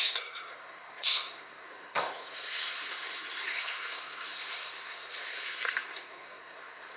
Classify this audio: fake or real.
fake